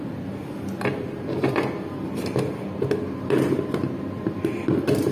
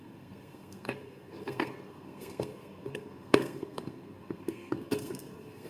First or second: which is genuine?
first